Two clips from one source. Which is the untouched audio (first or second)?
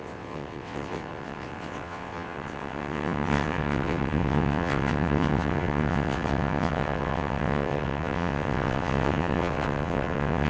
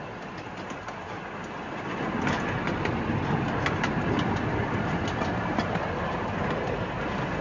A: second